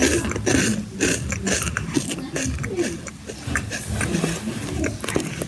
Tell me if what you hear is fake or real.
real